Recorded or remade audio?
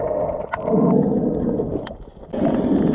recorded